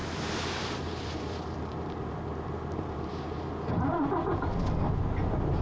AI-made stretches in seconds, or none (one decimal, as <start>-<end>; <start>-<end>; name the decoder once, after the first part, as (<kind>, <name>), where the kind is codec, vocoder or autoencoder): 0.0-3.4 (vocoder, BigVGAN v2)